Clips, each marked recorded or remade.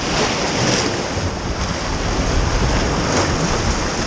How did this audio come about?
recorded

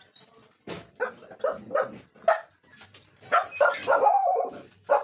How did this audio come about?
recorded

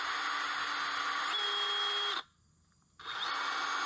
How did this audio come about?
recorded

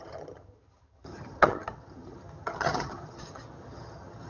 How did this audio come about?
remade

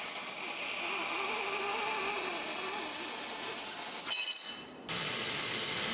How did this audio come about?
recorded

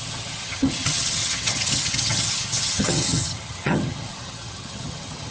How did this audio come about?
remade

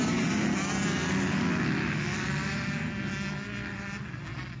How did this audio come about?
recorded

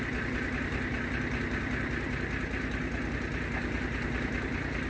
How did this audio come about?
recorded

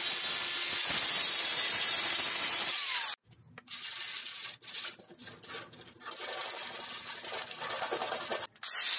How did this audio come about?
recorded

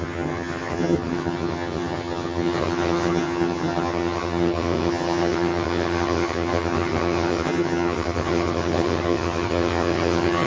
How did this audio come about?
remade